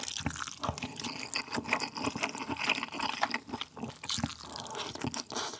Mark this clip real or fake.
real